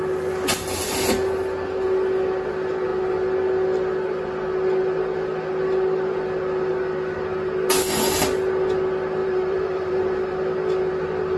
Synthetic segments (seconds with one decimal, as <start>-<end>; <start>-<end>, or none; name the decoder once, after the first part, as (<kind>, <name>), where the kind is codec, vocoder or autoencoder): 9.2-10.3 (vocoder, BigVGAN v2)